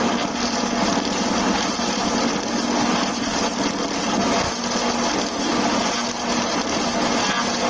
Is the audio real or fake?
real